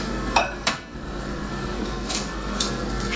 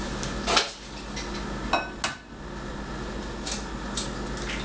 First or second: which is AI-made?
first